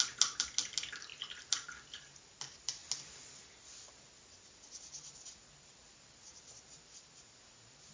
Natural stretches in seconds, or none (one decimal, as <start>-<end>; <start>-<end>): 0.0-7.9